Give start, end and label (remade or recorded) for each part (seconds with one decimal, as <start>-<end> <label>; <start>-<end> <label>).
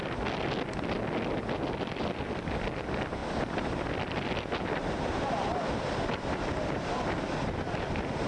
0.0-8.3 recorded